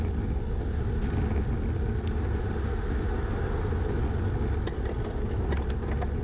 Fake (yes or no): no